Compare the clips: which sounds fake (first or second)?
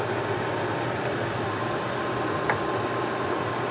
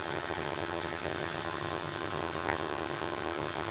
second